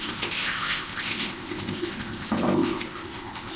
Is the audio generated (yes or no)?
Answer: yes